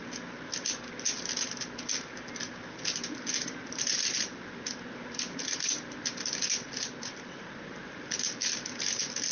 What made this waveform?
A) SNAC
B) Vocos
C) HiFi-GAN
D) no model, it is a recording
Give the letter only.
D